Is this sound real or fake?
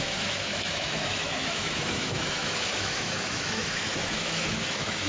fake